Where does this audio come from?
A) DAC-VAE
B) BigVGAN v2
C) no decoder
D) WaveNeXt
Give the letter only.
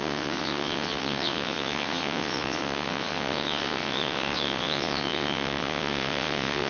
D